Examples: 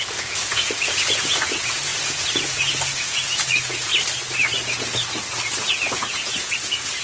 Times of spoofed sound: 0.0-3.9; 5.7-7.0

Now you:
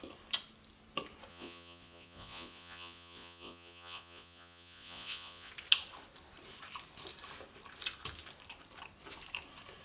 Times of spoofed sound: 1.3-5.5

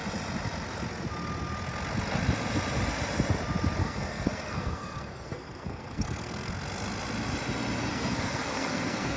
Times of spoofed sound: 3.8-6.5; 7.9-9.2

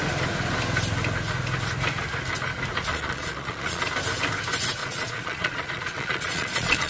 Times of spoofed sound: 2.9-3.8; 4.8-6.9

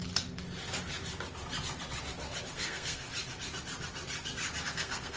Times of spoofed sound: 2.5-3.1; 4.7-5.2

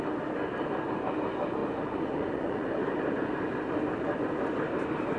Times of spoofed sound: 1.6-2.7